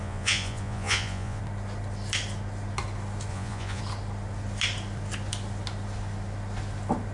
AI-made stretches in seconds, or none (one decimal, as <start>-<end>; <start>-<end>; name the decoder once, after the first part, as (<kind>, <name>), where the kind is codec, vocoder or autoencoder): 0.0-1.4 (vocoder, Vocos); 3.3-3.8